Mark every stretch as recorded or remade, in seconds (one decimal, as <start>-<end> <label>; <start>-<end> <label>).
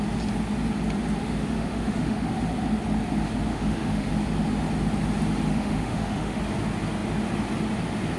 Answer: 0.0-1.2 recorded; 1.2-2.3 remade; 2.3-3.5 recorded; 3.5-4.1 remade; 4.1-5.5 recorded; 5.5-6.4 remade; 6.4-8.2 recorded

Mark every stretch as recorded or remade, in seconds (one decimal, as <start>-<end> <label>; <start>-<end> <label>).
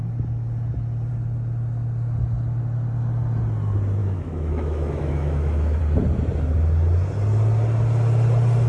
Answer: 0.0-4.0 recorded; 4.0-5.8 remade; 5.8-8.7 recorded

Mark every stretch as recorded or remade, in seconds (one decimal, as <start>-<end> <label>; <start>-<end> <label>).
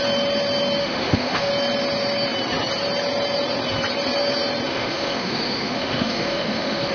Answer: 0.0-0.8 recorded; 0.8-1.5 remade; 1.5-4.7 recorded; 4.7-6.9 remade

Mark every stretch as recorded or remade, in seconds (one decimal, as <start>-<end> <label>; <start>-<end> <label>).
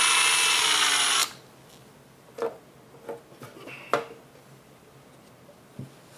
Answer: 0.0-6.2 recorded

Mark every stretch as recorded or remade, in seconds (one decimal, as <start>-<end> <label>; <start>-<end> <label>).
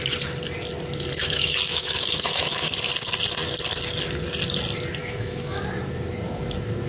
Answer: 0.0-1.2 recorded; 1.2-2.7 remade; 2.7-5.0 recorded; 5.0-5.6 remade; 5.6-6.9 recorded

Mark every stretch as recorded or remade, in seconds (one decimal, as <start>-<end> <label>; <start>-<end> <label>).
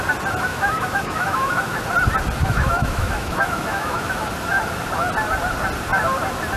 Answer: 0.0-0.5 recorded; 0.5-1.8 remade; 1.8-2.4 recorded; 2.4-4.3 remade; 4.3-6.6 recorded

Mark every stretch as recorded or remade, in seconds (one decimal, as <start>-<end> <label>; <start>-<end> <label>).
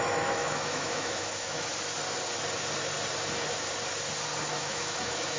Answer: 0.0-1.7 remade; 1.7-4.5 recorded; 4.5-5.4 remade